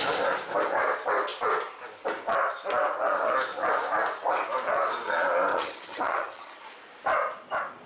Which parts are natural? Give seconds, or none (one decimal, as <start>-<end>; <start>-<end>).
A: 0.0-5.5; 6.6-7.9